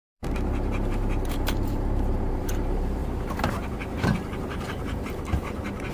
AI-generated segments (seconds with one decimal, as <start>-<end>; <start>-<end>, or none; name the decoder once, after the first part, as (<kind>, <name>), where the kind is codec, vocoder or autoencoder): 0.0-3.0 (vocoder, BigVGAN v2); 4.0-5.9